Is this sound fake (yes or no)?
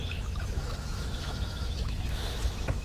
yes